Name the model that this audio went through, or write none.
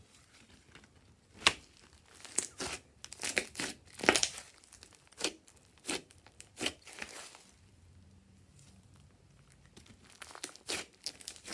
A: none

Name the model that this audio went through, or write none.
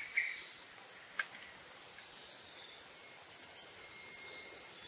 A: none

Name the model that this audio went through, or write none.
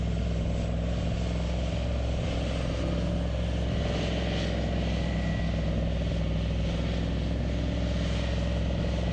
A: none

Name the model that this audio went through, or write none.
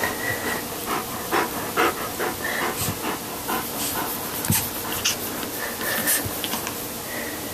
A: none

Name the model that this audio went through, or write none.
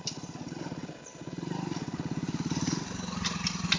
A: none